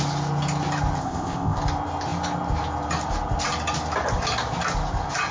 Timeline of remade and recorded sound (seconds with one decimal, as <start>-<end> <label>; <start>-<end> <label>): 0.0-1.0 recorded; 1.0-1.6 remade; 1.6-5.3 recorded